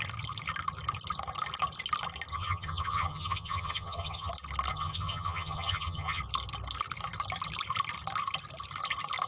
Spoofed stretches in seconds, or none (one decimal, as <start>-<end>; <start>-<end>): 2.3-4.3; 4.7-6.2